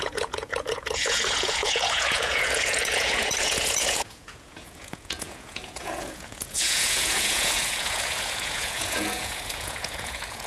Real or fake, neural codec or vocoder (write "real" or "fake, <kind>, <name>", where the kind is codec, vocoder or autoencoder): fake, vocoder, Vocos